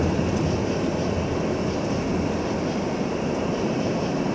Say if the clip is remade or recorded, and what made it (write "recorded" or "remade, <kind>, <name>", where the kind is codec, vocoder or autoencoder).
recorded